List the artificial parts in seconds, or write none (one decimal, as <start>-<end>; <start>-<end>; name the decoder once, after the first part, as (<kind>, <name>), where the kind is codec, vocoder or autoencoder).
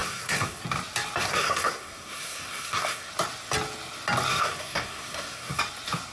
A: 0.0-0.6 (codec, SNAC); 1.2-3.1; 4.3-5.6